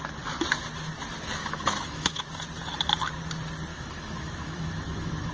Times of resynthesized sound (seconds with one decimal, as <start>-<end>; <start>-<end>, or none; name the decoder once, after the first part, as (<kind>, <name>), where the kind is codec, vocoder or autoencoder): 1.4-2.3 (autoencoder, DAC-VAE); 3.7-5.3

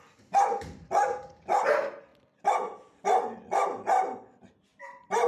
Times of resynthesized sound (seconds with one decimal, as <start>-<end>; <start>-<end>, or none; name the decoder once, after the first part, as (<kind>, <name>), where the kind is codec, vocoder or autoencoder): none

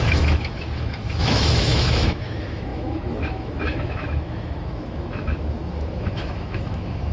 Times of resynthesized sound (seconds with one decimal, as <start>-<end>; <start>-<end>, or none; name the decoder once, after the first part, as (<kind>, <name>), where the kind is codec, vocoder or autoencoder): 0.0-7.1 (autoencoder, DAC-VAE)

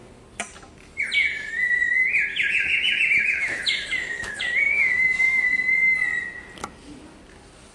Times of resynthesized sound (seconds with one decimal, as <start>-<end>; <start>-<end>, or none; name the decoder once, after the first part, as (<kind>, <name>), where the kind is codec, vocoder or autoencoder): 2.3-5.6 (autoencoder, DAC-VAE)